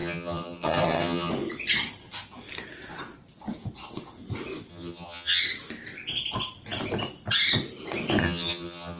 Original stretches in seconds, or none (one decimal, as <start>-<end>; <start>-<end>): 1.3-4.7; 5.4-8.2

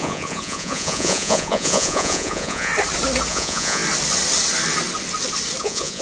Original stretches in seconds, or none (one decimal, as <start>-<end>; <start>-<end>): 2.7-3.3; 3.8-5.6

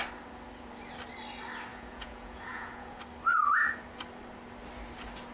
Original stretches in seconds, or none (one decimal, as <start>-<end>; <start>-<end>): 0.0-1.7; 3.0-5.3

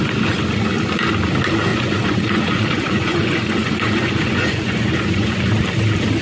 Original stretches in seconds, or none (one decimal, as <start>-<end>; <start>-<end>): 0.0-1.7; 5.4-6.2

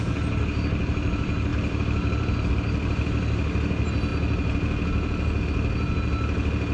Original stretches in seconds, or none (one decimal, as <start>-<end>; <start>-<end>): 0.0-1.5; 2.5-6.7

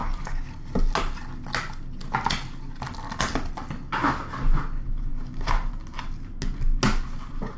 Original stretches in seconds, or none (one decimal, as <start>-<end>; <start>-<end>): 0.0-7.6